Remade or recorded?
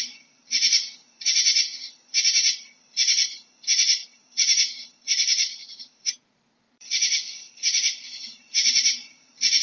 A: remade